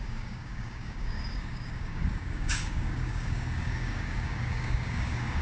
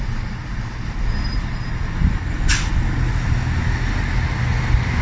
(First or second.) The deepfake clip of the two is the first